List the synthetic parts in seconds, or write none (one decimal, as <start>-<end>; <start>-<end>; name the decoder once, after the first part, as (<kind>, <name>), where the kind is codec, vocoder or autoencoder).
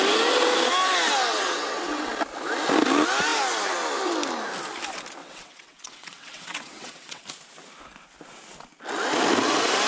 1.3-2.1 (vocoder, WaveNeXt); 5.2-7.2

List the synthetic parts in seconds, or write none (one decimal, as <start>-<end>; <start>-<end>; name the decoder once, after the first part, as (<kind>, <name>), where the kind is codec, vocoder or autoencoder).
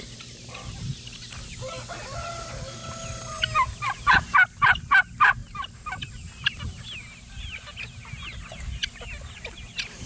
none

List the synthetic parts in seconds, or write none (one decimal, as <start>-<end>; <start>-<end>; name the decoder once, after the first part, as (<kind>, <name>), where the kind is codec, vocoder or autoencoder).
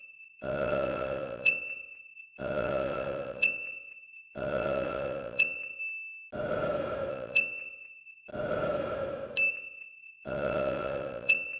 0.0-5.8 (vocoder, WaveNeXt); 7.1-8.3; 9.5-11.6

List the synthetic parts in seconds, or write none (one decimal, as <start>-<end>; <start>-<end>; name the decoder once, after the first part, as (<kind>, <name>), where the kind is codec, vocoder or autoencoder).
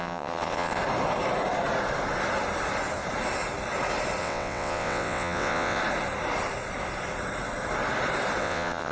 0.0-0.8 (vocoder, WaveNeXt); 4.2-5.8; 8.4-8.9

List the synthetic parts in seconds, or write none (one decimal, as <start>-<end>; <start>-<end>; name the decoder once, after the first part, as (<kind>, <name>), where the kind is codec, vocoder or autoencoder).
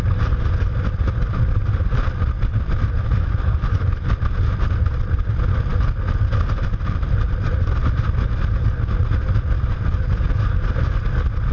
none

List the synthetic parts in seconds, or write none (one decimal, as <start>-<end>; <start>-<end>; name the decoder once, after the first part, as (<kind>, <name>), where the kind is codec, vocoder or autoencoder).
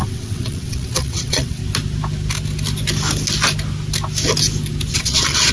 0.0-1.6 (vocoder, WaveNeXt); 4.9-5.5